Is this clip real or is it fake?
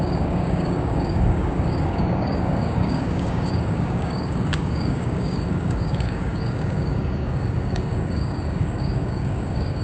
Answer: fake